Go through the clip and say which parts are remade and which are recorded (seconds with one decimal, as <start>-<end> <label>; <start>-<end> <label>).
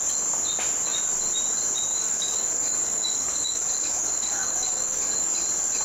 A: 0.0-1.9 recorded; 1.9-5.3 remade; 5.3-5.8 recorded